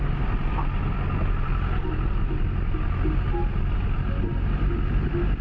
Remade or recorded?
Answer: recorded